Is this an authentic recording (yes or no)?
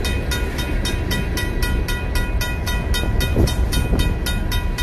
yes